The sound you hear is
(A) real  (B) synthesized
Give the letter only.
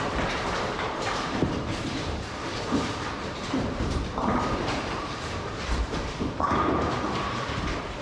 B